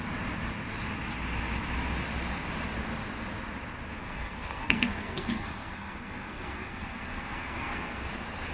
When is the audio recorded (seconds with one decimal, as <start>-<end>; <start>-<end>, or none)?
0.0-4.0; 8.1-8.5